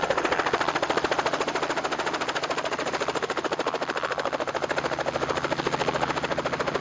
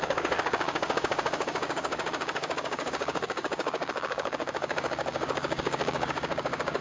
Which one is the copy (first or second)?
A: second